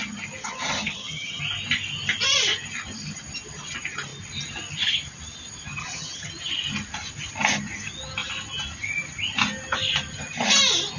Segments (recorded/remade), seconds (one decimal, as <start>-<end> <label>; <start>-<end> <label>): 0.0-0.4 recorded; 0.4-1.4 remade; 1.4-5.8 recorded; 5.8-6.3 remade; 6.3-11.0 recorded